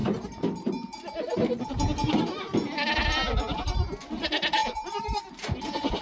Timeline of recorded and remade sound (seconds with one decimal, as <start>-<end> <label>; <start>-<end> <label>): 0.0-6.0 recorded